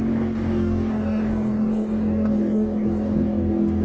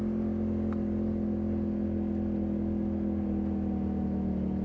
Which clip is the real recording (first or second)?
second